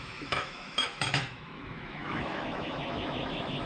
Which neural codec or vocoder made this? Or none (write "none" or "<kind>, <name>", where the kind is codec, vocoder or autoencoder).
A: autoencoder, DAC-VAE